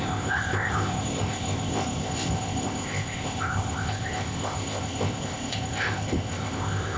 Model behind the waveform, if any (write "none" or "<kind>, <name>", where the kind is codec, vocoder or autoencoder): codec, ZipCodec